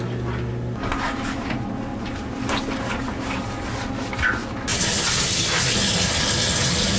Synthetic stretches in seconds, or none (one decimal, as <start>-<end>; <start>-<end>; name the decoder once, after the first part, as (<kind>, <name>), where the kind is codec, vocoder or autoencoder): 1.9-2.6 (vocoder, BigVGAN v2); 4.7-5.2